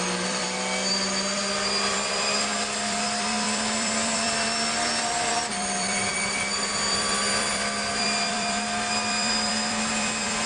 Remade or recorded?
remade